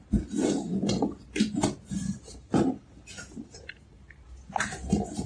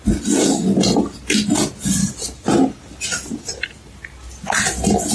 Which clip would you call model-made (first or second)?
first